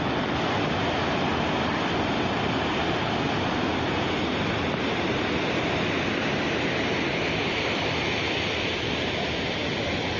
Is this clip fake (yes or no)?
no